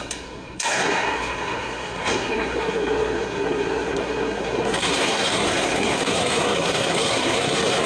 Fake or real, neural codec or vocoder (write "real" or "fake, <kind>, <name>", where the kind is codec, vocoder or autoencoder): fake, codec, SNAC